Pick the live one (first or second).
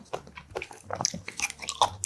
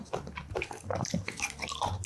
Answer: first